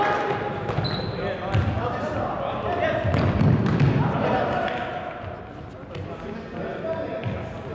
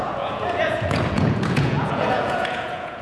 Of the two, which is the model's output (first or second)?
second